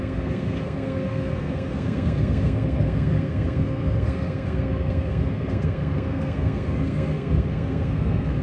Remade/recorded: remade